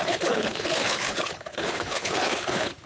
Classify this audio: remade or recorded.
remade